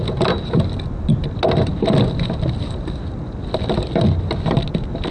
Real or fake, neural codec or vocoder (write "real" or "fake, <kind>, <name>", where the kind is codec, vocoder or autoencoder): real